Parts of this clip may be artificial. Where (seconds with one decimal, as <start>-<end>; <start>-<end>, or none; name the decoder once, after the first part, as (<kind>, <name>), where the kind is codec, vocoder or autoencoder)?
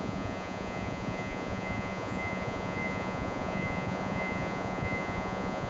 0.0-5.7 (vocoder, Vocos)